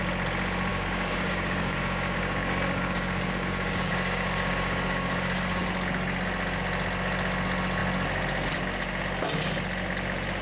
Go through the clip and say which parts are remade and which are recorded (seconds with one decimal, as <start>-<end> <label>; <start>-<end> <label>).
0.0-0.7 recorded; 0.7-5.6 remade; 5.6-10.4 recorded

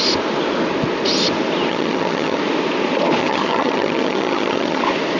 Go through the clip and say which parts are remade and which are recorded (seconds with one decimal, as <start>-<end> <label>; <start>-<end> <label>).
0.0-1.7 recorded; 1.7-2.4 remade; 2.4-3.2 recorded; 3.2-4.8 remade; 4.8-5.2 recorded